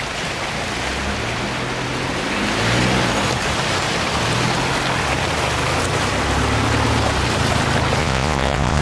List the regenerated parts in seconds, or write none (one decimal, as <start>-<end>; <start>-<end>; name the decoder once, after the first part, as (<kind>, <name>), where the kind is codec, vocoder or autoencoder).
8.0-8.8 (vocoder, Vocos)